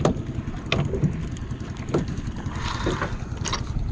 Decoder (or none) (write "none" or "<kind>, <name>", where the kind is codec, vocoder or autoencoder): none